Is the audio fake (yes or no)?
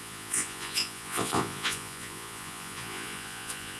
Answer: yes